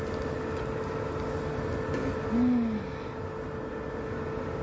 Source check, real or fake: real